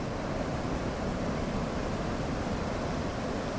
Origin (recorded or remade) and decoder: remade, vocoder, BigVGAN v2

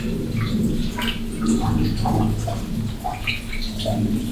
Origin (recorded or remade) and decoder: recorded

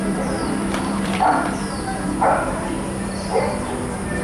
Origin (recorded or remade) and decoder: remade, vocoder, BigVGAN v2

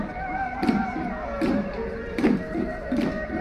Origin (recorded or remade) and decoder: remade, vocoder, BigVGAN v2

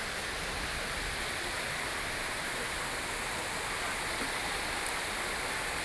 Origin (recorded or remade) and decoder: recorded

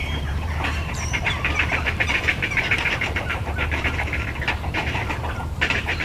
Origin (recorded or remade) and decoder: remade, vocoder, BigVGAN v2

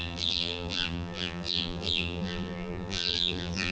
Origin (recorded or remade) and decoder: remade, vocoder, BigVGAN v2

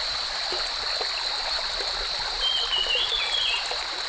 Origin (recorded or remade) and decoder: recorded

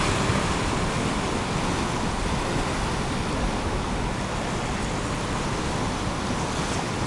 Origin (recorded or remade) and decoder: recorded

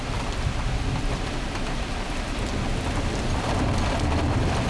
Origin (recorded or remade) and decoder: remade, vocoder, BigVGAN v2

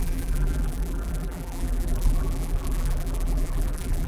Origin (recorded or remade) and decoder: remade, vocoder, BigVGAN v2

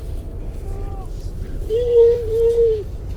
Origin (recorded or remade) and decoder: remade, vocoder, BigVGAN v2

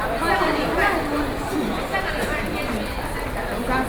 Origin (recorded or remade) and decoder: recorded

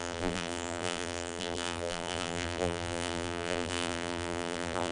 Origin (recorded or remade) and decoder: remade, vocoder, BigVGAN v2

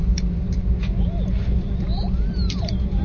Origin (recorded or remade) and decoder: remade, vocoder, BigVGAN v2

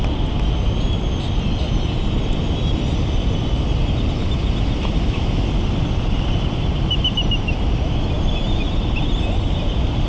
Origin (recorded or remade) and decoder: recorded